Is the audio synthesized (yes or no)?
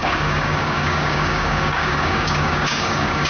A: yes